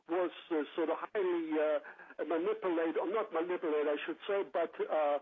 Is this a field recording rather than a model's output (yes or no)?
yes